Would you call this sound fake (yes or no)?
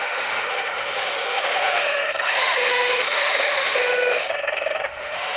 yes